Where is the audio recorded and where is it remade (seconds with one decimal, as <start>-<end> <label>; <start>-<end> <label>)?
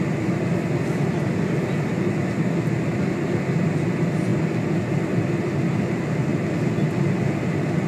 0.0-4.3 recorded; 4.3-5.6 remade; 5.6-7.9 recorded